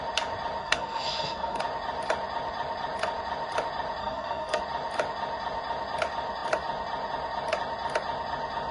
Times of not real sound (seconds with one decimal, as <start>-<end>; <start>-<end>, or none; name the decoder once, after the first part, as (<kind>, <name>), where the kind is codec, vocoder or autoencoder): 0.6-1.6 (codec, SNAC); 4.0-4.6